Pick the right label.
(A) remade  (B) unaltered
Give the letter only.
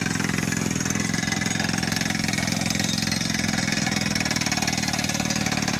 B